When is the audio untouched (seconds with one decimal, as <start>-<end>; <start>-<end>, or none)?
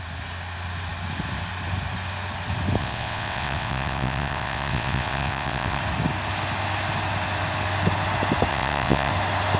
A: 0.0-2.8; 5.8-8.5; 9.1-9.6